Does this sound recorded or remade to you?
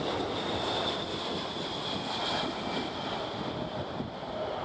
recorded